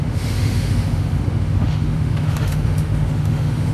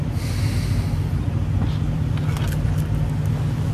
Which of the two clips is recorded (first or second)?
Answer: second